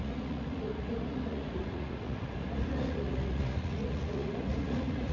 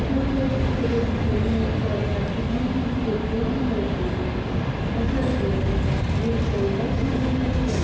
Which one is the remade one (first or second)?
first